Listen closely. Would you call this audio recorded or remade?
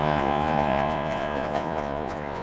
remade